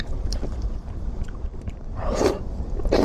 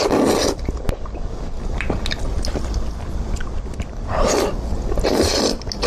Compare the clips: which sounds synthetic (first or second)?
first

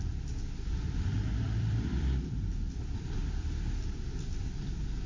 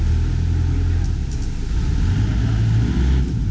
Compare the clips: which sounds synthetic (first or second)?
first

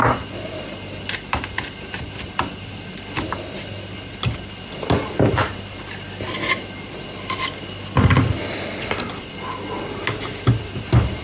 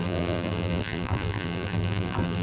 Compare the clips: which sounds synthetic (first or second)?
second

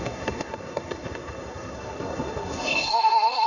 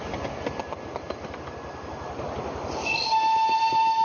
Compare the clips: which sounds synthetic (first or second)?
first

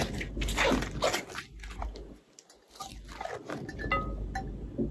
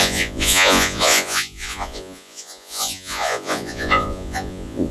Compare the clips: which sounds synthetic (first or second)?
second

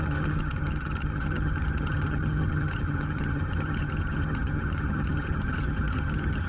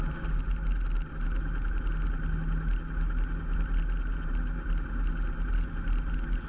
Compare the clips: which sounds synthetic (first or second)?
first